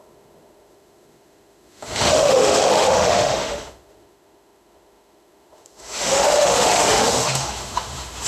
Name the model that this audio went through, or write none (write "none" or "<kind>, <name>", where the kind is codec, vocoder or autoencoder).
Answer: autoencoder, DAC-VAE